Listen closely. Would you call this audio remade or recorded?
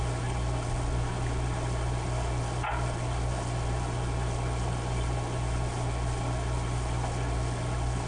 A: recorded